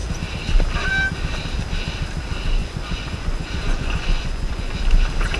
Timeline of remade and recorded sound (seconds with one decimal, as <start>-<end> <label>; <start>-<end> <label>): 0.0-2.6 recorded; 2.6-4.8 remade; 4.8-5.4 recorded